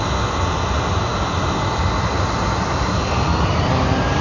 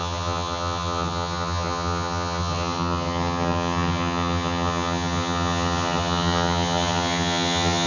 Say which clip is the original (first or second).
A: first